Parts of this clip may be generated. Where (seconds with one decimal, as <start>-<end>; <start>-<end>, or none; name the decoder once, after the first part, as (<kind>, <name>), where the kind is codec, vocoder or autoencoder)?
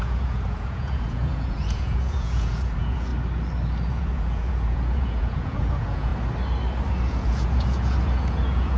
0.0-3.1 (vocoder, Vocos); 3.9-6.1; 7.0-8.8